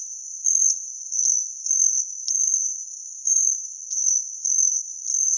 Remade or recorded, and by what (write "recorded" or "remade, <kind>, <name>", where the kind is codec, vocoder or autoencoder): remade, codec, SNAC